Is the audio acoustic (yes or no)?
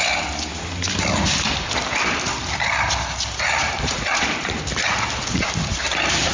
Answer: yes